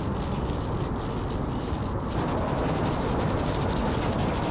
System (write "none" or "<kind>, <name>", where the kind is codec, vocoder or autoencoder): none